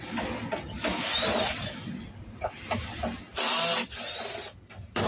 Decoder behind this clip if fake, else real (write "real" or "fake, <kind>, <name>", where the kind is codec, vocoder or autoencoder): real